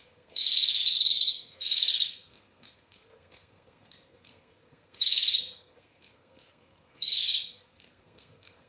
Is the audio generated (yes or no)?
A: yes